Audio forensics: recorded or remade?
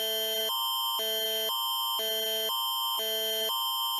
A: recorded